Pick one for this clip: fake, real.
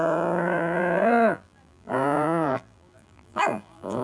fake